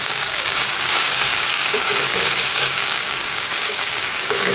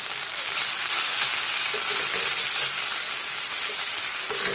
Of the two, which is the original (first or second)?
second